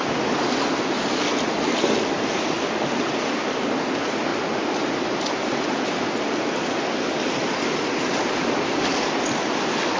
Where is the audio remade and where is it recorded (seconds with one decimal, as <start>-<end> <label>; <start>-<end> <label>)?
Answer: 0.0-10.0 recorded